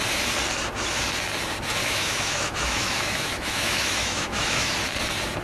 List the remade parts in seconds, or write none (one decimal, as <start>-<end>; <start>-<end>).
1.8-4.7